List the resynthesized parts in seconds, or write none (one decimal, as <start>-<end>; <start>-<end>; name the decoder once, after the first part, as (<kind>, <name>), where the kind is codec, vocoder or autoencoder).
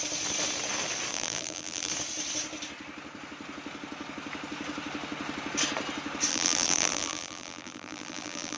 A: 1.1-1.9 (vocoder, BigVGAN v2); 6.3-8.6